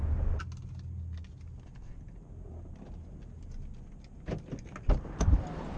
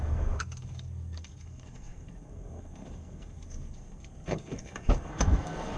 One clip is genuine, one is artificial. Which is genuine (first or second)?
first